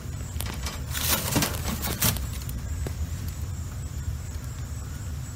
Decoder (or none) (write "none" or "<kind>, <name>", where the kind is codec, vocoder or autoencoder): vocoder, BigVGAN v2